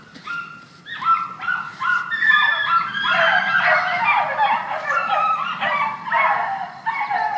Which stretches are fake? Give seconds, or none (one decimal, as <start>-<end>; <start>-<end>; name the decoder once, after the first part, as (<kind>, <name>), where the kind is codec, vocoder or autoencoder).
none